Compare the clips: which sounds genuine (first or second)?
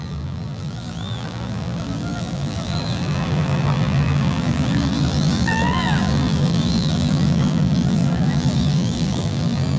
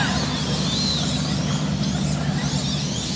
second